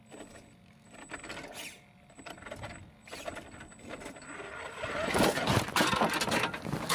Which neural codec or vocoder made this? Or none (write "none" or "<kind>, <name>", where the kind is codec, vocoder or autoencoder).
none